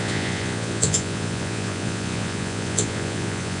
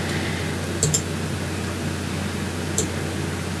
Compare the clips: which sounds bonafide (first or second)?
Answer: second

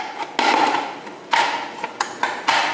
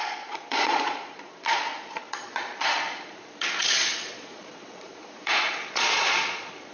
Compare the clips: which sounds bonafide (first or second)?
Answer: first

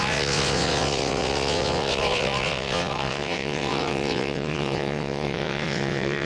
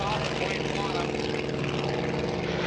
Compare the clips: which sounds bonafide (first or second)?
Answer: second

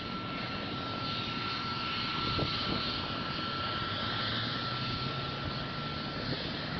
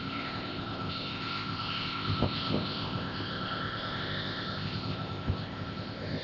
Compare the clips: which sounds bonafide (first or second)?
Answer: first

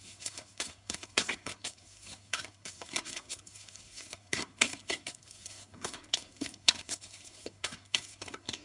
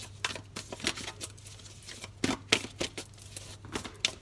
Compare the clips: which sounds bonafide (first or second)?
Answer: second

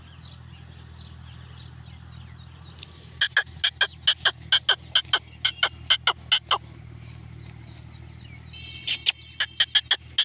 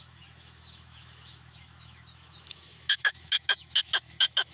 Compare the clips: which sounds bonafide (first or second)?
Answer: first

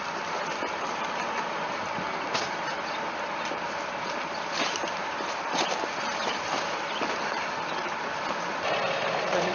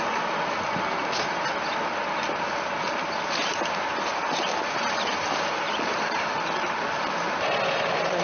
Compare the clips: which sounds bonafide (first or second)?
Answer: second